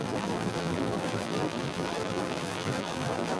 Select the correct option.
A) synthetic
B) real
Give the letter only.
A